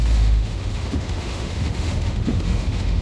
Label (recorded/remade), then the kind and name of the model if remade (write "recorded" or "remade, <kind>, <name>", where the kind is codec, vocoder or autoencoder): remade, autoencoder, DAC-VAE